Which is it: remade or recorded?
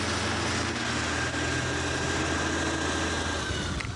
recorded